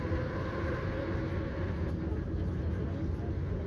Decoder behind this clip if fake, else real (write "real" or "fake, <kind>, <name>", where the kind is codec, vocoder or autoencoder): real